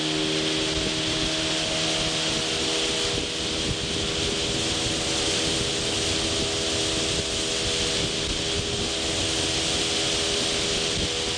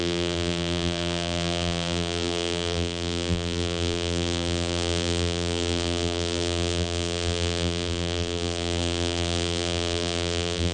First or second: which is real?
first